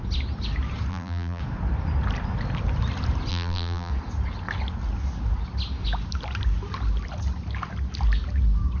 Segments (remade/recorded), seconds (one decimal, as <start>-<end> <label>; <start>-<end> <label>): 0.0-0.9 recorded; 0.9-1.4 remade; 1.4-3.3 recorded; 3.3-3.9 remade; 3.9-8.8 recorded